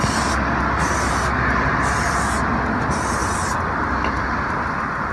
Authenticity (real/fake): real